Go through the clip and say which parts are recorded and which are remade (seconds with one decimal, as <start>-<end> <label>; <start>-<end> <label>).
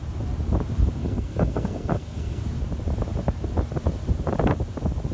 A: 0.0-1.0 recorded; 1.0-2.4 remade; 2.4-5.1 recorded